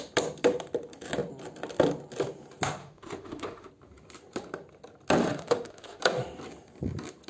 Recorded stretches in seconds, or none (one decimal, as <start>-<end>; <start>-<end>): 0.0-2.8; 3.7-5.2; 6.0-7.3